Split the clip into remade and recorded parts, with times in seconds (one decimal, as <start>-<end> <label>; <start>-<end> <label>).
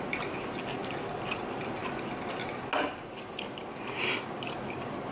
0.0-5.1 recorded